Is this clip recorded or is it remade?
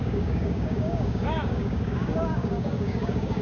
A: remade